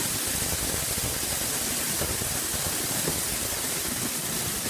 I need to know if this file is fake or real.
real